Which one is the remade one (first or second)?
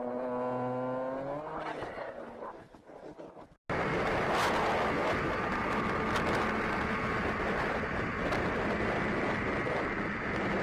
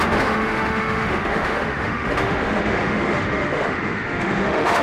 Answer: second